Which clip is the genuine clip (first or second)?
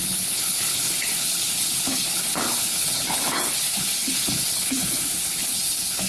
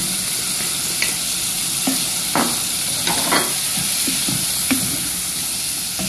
second